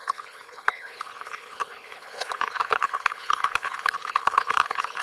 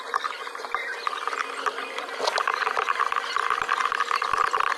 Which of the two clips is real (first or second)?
second